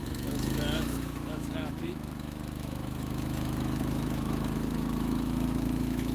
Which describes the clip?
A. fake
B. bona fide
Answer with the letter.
A